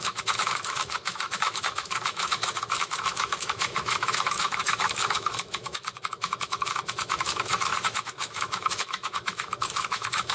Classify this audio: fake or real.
fake